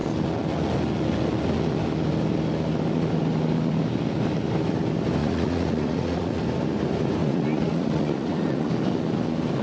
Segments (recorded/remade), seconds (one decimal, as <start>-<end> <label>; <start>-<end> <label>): 0.0-5.2 recorded; 5.2-6.4 remade; 6.4-7.2 recorded; 7.2-8.7 remade; 8.7-9.6 recorded